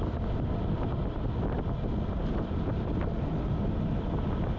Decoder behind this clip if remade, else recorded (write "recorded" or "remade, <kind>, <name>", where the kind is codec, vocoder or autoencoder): recorded